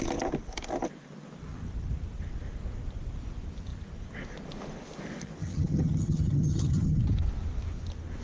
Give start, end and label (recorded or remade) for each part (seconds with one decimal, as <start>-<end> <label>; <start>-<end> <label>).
0.0-5.4 recorded; 5.4-7.0 remade; 7.0-8.2 recorded